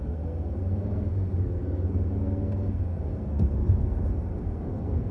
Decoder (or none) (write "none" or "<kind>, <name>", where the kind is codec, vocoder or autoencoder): codec, SNAC